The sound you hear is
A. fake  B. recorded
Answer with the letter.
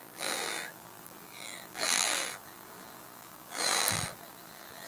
A